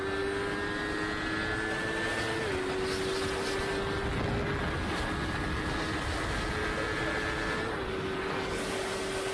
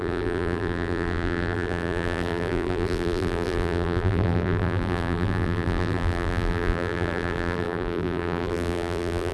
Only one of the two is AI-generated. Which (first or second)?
second